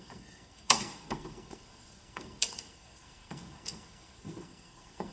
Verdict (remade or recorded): remade